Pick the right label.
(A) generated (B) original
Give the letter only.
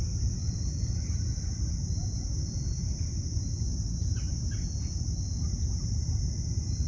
B